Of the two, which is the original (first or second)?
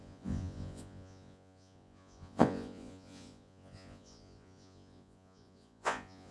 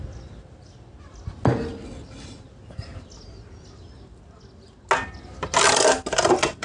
second